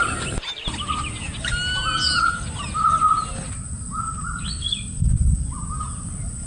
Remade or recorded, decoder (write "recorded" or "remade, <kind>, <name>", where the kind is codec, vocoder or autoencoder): recorded